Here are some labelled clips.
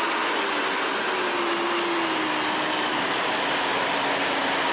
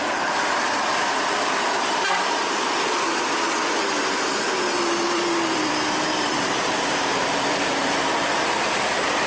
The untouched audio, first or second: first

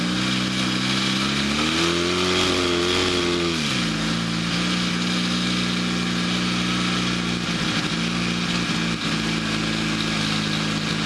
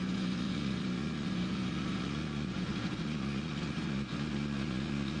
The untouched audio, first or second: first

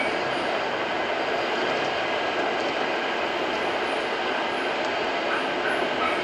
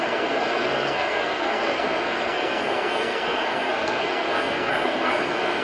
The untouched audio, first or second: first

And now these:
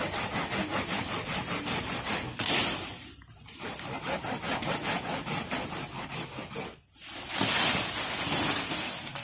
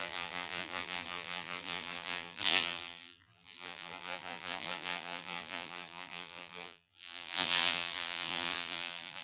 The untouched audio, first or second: first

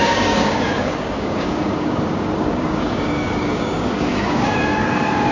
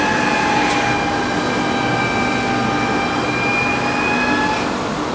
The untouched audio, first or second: second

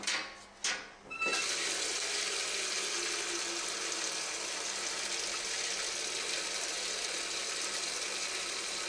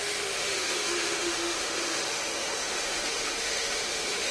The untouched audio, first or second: first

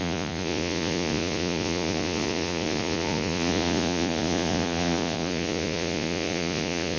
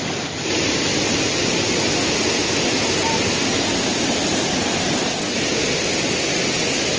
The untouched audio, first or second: second